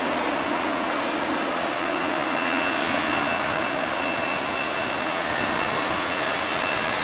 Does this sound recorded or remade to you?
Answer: remade